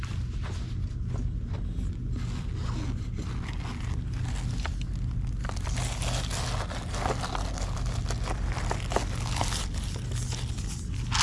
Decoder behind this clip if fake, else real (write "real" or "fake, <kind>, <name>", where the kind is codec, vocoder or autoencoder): real